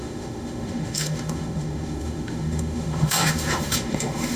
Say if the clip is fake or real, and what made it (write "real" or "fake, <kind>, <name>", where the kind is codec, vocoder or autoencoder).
fake, autoencoder, DAC-VAE